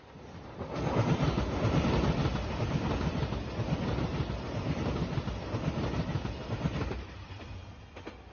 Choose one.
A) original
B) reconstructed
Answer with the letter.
A